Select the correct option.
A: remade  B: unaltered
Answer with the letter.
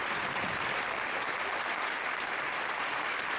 A